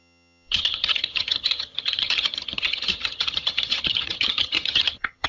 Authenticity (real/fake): fake